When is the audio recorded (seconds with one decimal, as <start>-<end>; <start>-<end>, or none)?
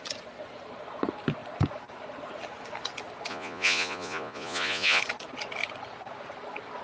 0.0-3.3; 5.0-6.8